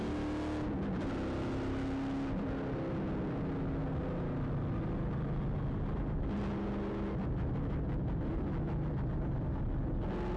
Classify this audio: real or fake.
real